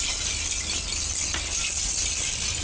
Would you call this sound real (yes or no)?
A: yes